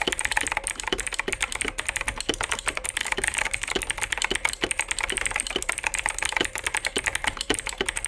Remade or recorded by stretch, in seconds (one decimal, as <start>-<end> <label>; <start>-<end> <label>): 0.0-3.0 recorded; 3.0-3.7 remade; 3.7-8.1 recorded